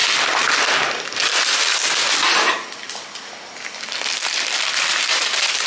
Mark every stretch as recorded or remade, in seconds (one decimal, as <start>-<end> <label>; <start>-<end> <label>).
0.0-4.9 recorded; 4.9-5.7 remade